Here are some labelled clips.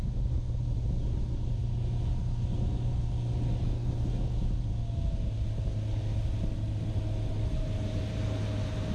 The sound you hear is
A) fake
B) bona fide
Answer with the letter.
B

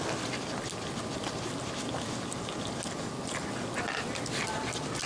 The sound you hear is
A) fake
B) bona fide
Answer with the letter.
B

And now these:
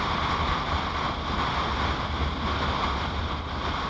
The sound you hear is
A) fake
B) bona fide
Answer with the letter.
B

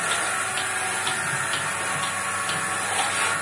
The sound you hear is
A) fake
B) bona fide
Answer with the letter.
B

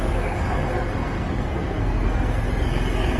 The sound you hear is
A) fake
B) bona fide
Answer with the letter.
A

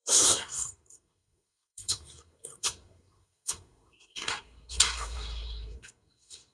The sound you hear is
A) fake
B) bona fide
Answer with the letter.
A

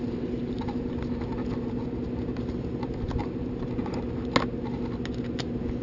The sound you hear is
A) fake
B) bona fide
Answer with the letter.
B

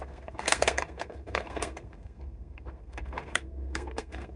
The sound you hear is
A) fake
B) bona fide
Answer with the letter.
A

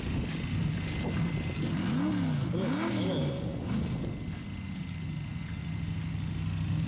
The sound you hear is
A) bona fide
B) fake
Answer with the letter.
A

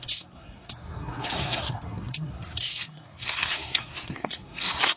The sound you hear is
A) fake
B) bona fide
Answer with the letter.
A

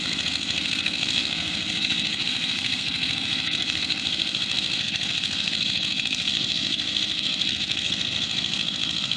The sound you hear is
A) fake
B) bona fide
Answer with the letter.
A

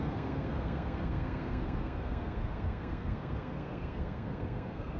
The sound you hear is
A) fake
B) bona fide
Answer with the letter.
A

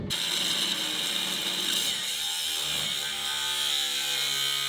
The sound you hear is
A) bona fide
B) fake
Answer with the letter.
A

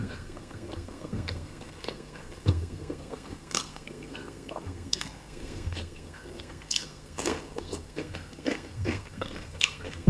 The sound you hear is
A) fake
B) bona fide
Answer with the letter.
A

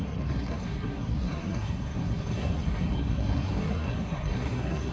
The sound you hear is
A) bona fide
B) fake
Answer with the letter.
B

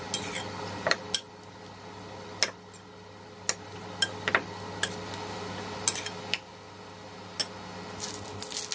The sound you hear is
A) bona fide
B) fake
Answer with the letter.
A